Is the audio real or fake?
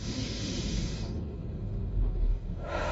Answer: fake